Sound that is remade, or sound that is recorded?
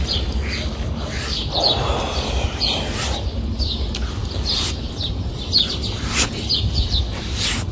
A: recorded